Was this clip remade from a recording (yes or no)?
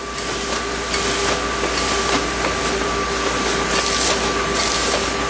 no